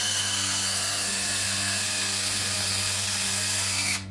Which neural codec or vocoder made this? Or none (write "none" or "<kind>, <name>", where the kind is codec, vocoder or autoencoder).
codec, SNAC